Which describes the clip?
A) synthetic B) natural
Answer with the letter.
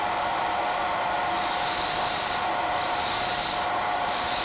B